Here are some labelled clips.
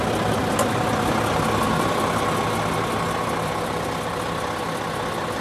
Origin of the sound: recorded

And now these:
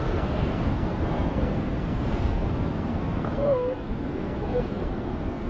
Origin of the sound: remade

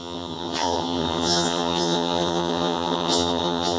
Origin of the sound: remade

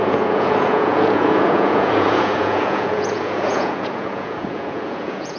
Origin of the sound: remade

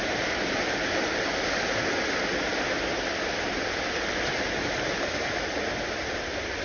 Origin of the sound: recorded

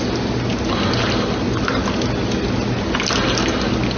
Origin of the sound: recorded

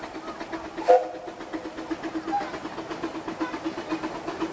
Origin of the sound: recorded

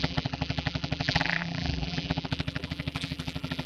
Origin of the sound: remade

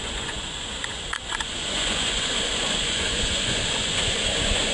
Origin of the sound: remade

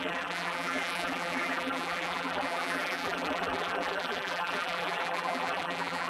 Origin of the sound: remade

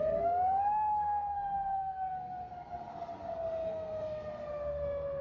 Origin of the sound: remade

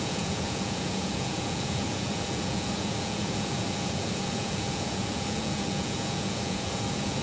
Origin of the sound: remade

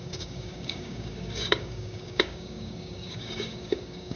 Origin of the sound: remade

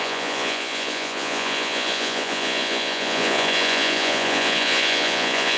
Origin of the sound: remade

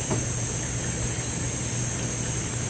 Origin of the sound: recorded